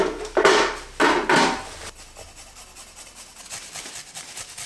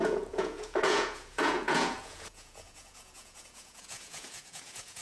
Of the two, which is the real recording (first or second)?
first